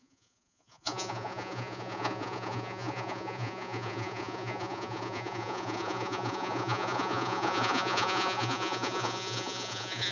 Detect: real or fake fake